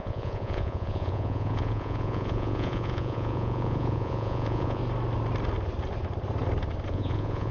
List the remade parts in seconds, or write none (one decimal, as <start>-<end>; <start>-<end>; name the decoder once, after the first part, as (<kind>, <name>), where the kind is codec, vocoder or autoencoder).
0.0-4.8 (vocoder, Vocos); 6.9-7.5